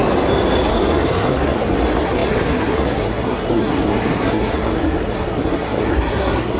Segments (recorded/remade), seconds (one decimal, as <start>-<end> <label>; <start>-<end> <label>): 0.0-0.7 recorded; 0.7-6.6 remade